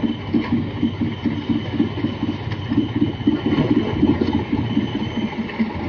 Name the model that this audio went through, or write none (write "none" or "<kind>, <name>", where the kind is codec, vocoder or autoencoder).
none